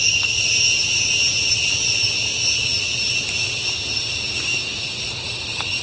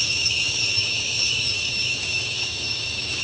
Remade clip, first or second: second